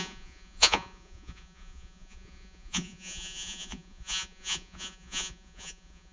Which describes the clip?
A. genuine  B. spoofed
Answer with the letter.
B